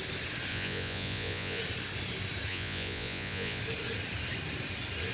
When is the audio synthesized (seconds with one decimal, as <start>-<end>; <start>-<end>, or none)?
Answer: 0.5-1.6; 2.5-3.6